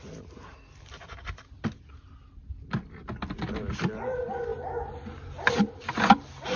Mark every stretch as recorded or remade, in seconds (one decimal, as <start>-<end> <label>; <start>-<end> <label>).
0.0-6.6 recorded